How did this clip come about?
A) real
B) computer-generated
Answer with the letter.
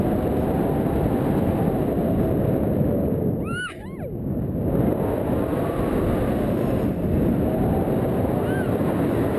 A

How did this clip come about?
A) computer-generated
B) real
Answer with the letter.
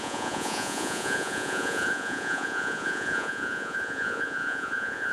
A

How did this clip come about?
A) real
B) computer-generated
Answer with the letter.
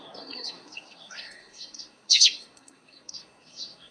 B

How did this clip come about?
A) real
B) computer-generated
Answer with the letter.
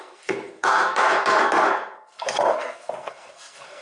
B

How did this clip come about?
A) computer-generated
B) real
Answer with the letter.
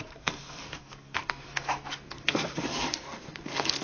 A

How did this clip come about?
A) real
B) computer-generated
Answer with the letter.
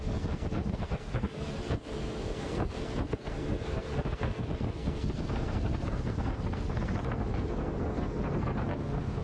B